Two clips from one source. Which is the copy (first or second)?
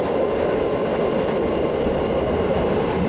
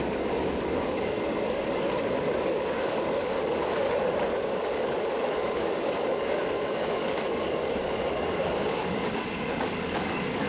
second